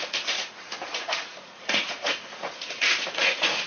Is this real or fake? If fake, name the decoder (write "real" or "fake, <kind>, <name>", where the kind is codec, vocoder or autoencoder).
fake, vocoder, Vocos